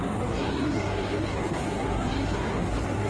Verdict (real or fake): fake